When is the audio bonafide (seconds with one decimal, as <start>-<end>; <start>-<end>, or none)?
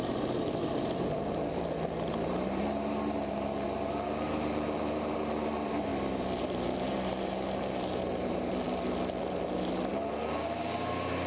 5.9-6.4